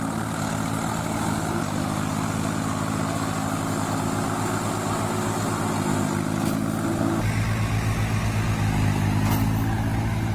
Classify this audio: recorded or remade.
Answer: recorded